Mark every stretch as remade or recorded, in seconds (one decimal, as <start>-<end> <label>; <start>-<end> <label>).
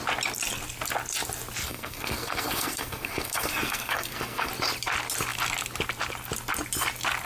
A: 0.0-1.6 recorded; 1.6-4.5 remade; 4.5-7.3 recorded